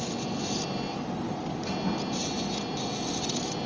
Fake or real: real